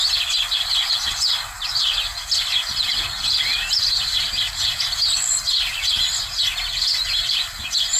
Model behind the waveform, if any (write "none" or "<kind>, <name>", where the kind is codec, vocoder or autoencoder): none